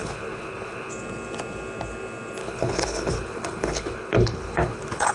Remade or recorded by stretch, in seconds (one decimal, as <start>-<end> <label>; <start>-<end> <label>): 0.0-0.9 remade; 0.9-2.4 recorded; 2.4-5.1 remade